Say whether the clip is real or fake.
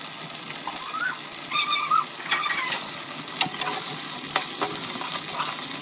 real